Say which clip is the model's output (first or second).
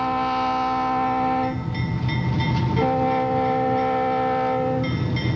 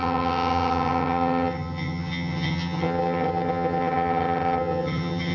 second